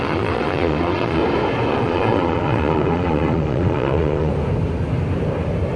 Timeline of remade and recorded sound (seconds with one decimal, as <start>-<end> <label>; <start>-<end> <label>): 0.0-1.2 remade; 1.2-1.7 recorded; 1.7-4.3 remade; 4.3-5.8 recorded